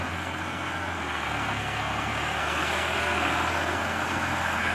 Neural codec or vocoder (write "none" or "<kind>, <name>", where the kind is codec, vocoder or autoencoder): codec, SNAC